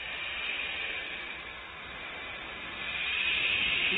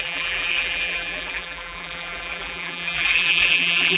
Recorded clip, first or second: first